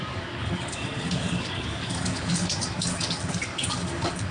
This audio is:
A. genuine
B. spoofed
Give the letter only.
B